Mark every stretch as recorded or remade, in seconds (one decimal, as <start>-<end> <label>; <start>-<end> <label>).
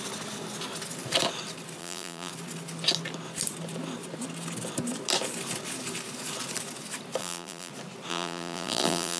0.0-1.8 recorded; 1.8-2.3 remade; 2.3-7.2 recorded; 7.2-7.7 remade; 7.7-8.1 recorded; 8.1-9.2 remade